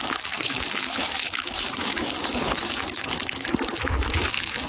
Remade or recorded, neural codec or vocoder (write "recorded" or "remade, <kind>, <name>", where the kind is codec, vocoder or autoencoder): remade, autoencoder, DAC-VAE